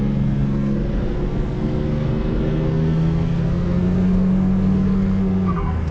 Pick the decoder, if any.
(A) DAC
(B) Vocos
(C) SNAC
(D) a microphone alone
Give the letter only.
C